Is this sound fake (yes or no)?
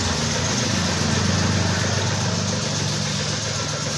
no